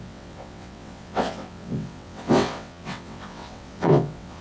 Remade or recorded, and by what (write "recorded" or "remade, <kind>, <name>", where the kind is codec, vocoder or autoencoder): remade, vocoder, WaveNeXt